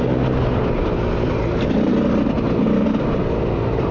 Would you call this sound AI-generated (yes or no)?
no